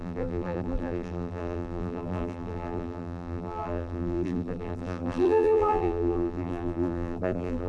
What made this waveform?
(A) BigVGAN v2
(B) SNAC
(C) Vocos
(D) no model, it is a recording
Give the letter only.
A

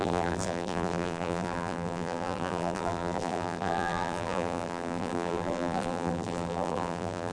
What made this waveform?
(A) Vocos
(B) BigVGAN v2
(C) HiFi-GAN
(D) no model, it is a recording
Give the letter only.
B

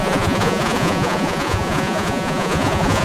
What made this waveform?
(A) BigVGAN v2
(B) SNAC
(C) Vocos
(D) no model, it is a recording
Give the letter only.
C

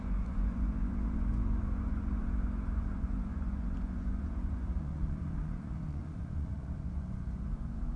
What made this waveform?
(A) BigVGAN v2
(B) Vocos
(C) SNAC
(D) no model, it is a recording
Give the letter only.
B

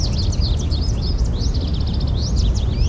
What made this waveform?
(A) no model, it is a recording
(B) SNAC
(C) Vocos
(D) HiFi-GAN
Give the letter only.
A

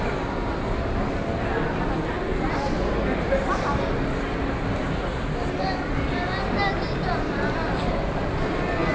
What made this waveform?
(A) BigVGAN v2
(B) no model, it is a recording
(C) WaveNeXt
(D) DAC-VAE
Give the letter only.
B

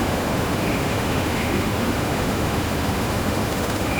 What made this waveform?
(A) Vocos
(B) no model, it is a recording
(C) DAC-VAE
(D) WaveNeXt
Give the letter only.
C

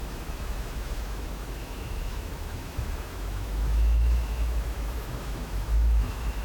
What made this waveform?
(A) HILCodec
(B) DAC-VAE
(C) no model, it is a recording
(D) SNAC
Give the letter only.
B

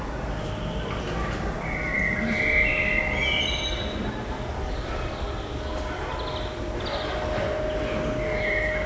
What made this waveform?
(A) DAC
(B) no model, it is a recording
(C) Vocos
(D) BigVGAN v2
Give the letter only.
B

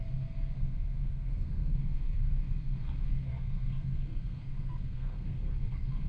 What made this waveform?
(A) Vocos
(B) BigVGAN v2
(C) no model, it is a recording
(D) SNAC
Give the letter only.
D